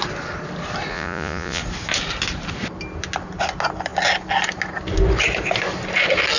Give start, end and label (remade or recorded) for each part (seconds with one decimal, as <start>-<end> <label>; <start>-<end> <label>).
0.0-0.9 recorded; 0.9-1.6 remade; 1.6-6.4 recorded